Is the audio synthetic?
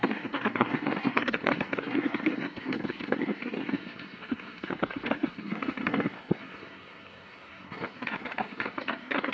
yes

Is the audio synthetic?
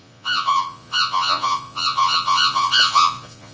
yes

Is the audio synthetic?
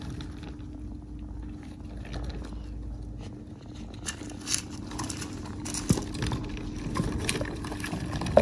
no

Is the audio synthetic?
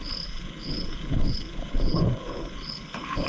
yes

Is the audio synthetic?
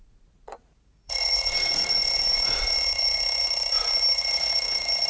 yes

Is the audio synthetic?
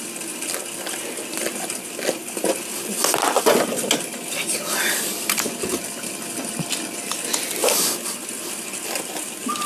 no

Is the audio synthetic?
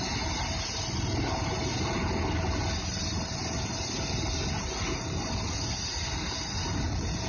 no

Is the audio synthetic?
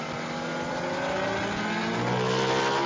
no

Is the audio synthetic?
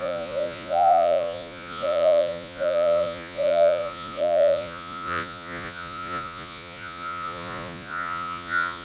yes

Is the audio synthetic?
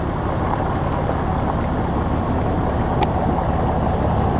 no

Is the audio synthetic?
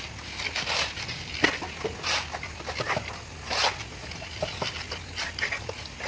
no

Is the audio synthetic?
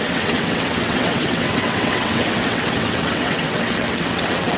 yes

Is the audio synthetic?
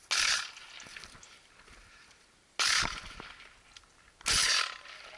no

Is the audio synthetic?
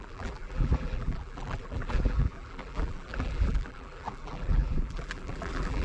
yes